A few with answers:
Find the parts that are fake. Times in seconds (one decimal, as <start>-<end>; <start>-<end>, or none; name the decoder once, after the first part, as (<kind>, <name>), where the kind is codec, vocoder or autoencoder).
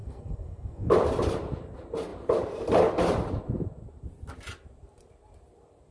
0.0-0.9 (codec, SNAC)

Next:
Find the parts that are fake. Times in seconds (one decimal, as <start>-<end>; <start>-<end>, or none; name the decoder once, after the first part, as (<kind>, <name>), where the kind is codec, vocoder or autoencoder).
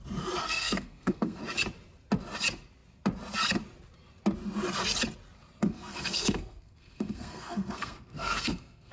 0.4-1.4 (codec, SNAC); 5.6-8.9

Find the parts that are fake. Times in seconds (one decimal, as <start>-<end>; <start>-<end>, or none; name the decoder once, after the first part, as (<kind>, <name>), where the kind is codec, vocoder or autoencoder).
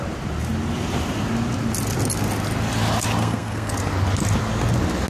3.2-3.7 (codec, SNAC)